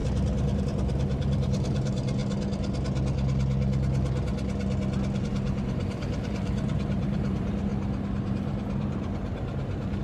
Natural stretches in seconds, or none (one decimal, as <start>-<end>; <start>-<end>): 2.2-5.2; 7.7-8.3